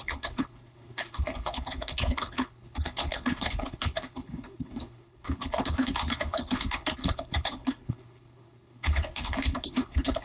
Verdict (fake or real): fake